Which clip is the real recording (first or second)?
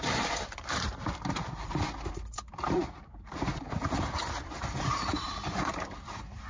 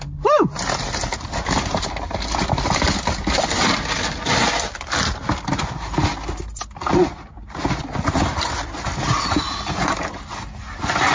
second